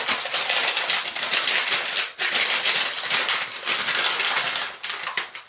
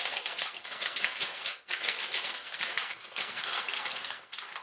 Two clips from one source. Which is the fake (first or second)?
second